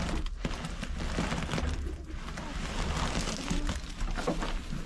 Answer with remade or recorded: recorded